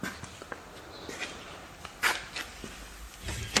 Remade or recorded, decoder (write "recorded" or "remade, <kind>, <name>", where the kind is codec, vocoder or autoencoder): recorded